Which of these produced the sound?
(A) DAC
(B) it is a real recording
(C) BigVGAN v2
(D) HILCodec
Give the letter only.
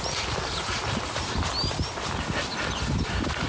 B